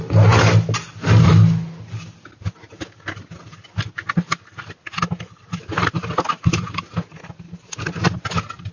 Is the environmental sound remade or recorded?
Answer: recorded